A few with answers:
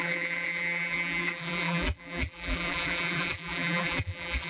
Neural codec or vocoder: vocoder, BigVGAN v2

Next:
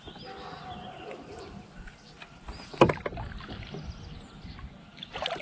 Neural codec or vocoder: none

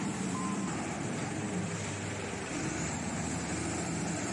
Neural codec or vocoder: vocoder, BigVGAN v2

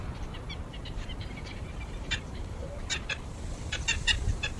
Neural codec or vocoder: vocoder, BigVGAN v2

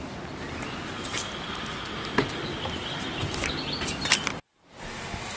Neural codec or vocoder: none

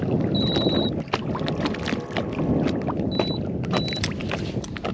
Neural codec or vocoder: none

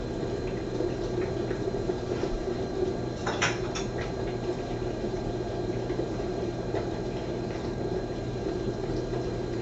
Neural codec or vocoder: vocoder, BigVGAN v2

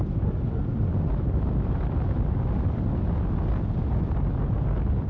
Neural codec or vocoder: none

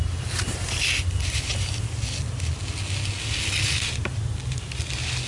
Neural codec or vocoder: none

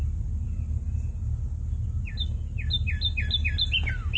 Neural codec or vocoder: none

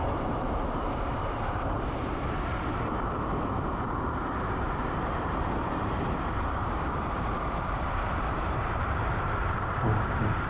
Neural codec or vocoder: vocoder, BigVGAN v2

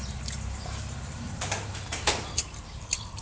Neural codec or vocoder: vocoder, BigVGAN v2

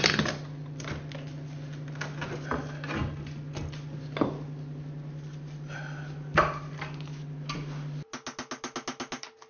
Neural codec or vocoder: none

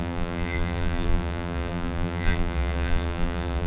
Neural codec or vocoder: vocoder, BigVGAN v2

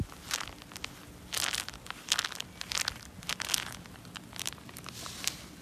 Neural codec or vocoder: none